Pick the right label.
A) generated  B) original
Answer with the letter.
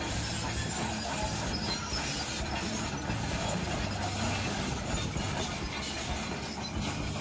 B